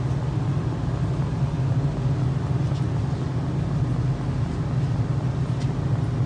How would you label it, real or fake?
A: real